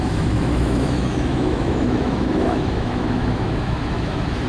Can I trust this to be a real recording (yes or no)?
no